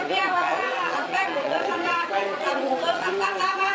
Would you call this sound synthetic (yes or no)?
yes